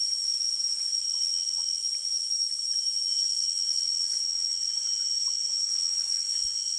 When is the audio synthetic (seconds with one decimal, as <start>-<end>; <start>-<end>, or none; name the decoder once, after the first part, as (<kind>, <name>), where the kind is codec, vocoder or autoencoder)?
1.0-1.8 (vocoder, WaveNeXt); 3.3-4.7; 5.7-6.8

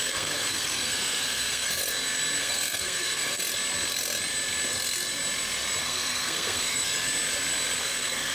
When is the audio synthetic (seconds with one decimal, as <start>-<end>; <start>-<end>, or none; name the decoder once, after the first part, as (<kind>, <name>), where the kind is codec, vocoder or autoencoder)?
0.0-1.8 (codec, SNAC); 2.4-3.4; 5.8-6.9; 7.8-8.3

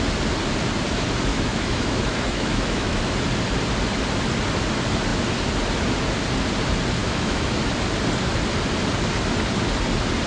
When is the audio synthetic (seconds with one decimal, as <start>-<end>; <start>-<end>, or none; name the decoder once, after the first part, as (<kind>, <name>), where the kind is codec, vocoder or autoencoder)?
1.3-3.0 (autoencoder, DAC-VAE); 7.0-7.6